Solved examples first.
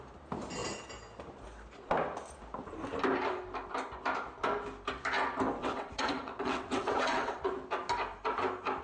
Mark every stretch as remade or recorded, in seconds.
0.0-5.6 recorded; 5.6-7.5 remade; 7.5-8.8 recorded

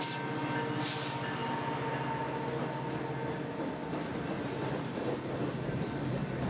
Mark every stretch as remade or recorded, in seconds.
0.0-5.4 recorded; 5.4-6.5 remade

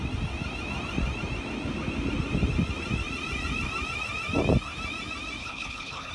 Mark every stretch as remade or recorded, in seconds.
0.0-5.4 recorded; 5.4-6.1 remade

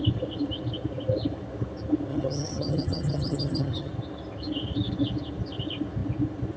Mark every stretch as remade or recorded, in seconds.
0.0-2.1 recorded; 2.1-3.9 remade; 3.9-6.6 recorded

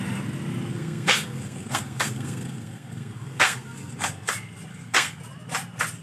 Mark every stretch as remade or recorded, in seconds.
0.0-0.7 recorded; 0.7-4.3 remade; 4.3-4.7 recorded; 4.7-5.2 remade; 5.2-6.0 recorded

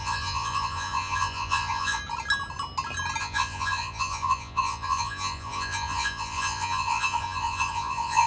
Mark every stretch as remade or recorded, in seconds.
0.0-2.0 remade; 2.0-3.2 recorded; 3.2-8.3 remade

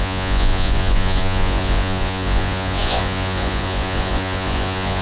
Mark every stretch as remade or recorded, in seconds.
0.0-5.0 remade